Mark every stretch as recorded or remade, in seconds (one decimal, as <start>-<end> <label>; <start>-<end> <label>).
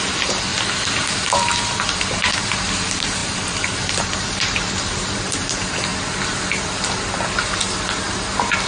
0.0-0.5 remade; 0.5-1.5 recorded; 1.5-5.9 remade; 5.9-6.8 recorded; 6.8-8.7 remade